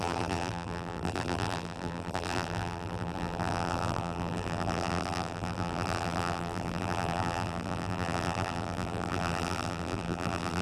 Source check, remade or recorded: remade